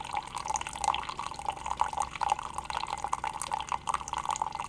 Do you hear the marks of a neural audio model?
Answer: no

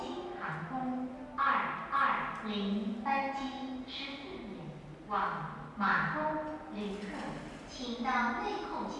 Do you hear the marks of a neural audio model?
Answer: no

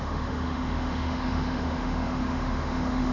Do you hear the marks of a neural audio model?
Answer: yes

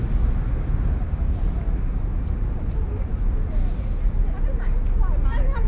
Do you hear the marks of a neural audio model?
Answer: no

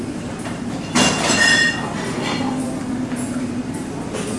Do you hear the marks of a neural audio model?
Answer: no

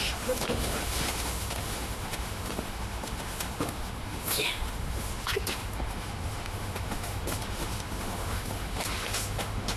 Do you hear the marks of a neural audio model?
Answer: yes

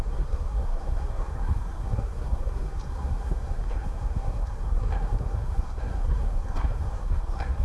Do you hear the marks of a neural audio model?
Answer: yes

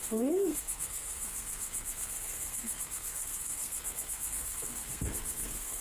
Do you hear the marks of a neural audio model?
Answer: yes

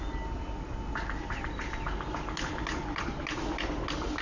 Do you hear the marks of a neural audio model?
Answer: no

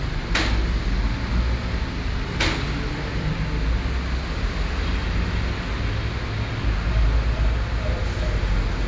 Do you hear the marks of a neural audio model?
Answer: no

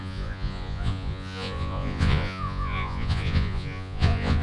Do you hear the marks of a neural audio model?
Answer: yes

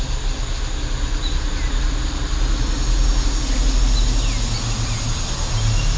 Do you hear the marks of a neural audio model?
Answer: no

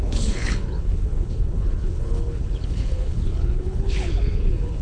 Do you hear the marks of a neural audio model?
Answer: yes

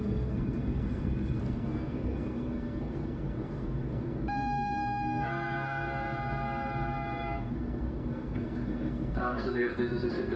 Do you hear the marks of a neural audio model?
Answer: yes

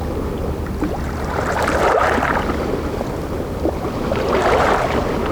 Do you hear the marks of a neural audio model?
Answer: no